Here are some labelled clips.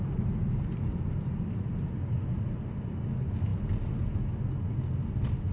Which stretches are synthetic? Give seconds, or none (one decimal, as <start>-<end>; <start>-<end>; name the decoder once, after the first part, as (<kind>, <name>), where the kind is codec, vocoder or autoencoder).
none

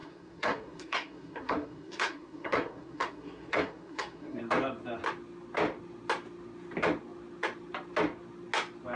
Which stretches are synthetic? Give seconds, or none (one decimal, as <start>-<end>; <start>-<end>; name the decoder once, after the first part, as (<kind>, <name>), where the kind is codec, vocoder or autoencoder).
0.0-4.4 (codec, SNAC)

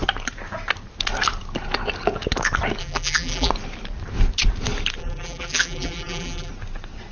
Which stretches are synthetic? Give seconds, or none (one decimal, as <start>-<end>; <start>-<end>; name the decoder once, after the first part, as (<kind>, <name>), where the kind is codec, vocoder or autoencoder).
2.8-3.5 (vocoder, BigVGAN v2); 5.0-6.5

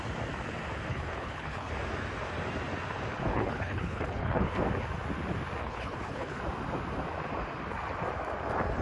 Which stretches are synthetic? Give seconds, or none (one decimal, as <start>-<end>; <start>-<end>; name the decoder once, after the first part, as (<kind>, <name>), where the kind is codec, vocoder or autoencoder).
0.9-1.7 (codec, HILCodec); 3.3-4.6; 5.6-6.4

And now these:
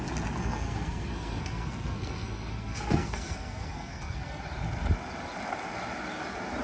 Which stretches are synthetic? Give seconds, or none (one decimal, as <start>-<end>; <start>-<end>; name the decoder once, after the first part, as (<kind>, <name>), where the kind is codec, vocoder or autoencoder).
0.4-4.4 (codec, SNAC)

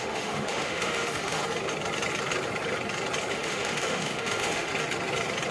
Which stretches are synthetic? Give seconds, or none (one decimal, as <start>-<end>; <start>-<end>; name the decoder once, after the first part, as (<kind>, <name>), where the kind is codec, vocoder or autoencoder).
0.0-1.4 (autoencoder, DAC-VAE); 3.3-4.7